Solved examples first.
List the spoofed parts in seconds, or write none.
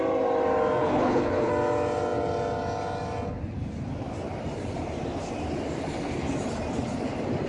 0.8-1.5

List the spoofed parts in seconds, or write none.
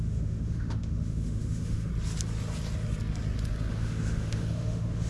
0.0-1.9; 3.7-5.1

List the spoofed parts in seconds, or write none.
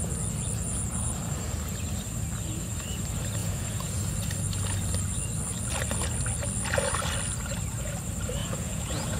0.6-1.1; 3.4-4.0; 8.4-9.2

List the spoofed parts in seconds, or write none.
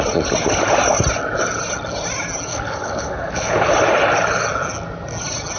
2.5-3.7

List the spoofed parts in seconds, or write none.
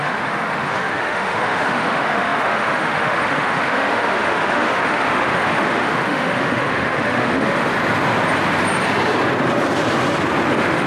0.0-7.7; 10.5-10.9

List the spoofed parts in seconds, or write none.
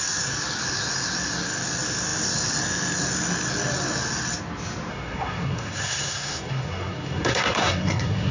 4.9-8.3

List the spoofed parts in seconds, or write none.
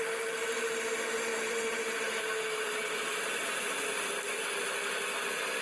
1.3-4.1